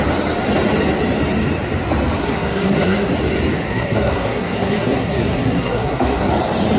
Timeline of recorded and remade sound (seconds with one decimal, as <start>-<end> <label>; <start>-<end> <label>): 0.0-2.2 recorded; 2.2-3.1 remade; 3.1-3.7 recorded; 3.7-6.3 remade; 6.3-6.8 recorded